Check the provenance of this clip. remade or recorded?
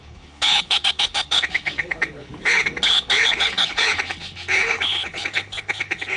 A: remade